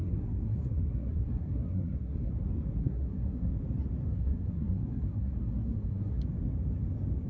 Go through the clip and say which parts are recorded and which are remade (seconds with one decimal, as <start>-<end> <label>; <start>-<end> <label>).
0.0-2.3 remade; 2.3-2.8 recorded; 2.8-3.5 remade; 3.5-4.1 recorded; 4.1-6.2 remade; 6.2-7.3 recorded

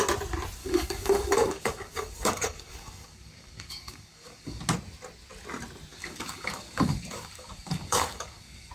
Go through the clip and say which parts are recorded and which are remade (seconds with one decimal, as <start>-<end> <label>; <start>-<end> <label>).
0.0-0.6 recorded; 0.6-4.6 remade; 4.6-5.9 recorded; 5.9-8.7 remade

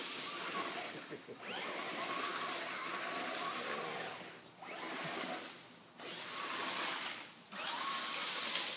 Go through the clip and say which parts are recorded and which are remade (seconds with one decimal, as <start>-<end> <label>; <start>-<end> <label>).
0.0-8.8 recorded

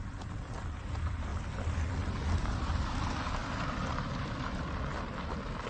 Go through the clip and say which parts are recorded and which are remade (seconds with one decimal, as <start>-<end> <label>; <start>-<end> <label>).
0.0-1.3 remade; 1.3-2.4 recorded; 2.4-5.7 remade

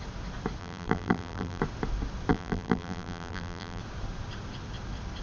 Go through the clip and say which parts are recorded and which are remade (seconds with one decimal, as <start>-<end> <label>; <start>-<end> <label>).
0.0-0.6 recorded; 0.6-1.6 remade; 1.6-2.3 recorded; 2.3-3.8 remade; 3.8-5.2 recorded

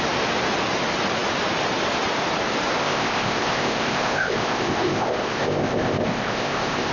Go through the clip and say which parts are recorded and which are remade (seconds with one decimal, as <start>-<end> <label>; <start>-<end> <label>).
0.0-2.8 recorded; 2.8-6.9 remade

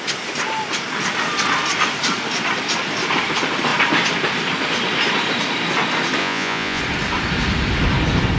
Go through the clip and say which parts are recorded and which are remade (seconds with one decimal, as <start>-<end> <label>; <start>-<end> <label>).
0.0-6.2 recorded; 6.2-6.8 remade; 6.8-8.4 recorded

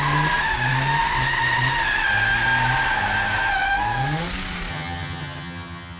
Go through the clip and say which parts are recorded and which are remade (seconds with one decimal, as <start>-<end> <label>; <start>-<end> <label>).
0.0-4.7 recorded; 4.7-6.0 remade